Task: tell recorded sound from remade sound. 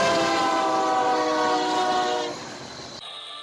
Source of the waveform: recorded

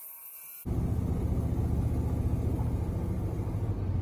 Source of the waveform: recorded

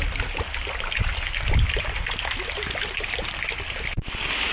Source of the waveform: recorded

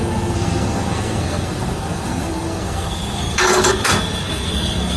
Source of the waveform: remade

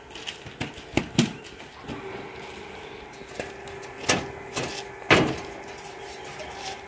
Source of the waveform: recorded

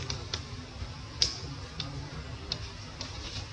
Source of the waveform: recorded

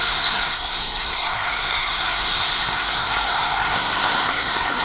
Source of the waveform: remade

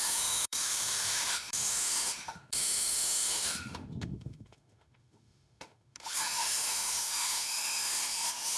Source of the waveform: remade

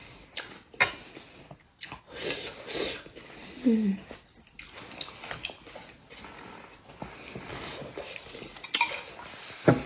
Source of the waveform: recorded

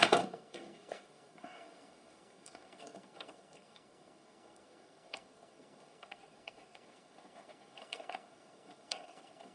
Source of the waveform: remade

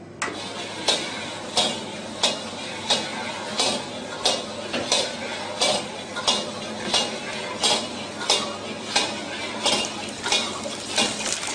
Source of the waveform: recorded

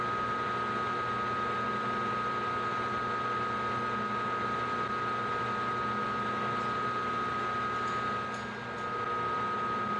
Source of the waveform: recorded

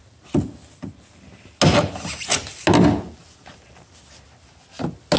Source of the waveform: recorded